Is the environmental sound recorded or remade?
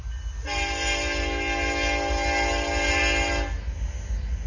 recorded